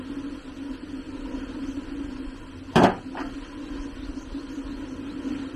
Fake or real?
real